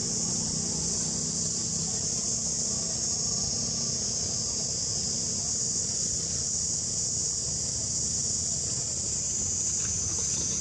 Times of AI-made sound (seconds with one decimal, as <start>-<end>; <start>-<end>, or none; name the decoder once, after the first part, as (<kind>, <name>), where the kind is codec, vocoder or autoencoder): 0.0-1.3 (vocoder, Vocos); 5.6-6.1